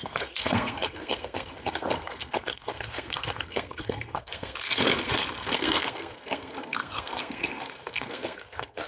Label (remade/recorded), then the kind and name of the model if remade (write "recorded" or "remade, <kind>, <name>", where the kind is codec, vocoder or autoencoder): remade, codec, SNAC